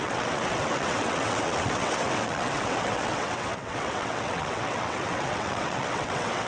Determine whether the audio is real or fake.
fake